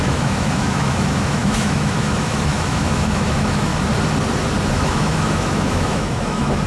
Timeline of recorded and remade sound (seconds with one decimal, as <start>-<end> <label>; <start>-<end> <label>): 0.0-3.7 remade; 3.7-4.7 recorded; 4.7-6.7 remade